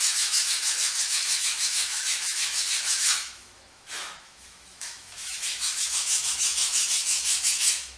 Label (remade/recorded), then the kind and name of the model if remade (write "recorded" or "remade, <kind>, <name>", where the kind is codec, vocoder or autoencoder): remade, autoencoder, DAC-VAE